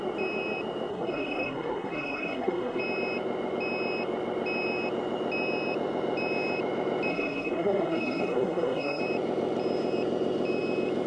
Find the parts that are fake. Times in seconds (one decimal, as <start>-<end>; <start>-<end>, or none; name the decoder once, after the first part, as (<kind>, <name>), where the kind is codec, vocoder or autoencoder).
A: 0.9-2.8 (codec, SNAC); 7.1-9.0